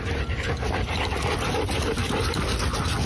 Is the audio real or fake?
real